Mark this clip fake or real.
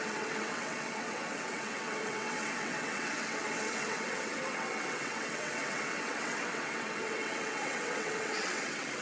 fake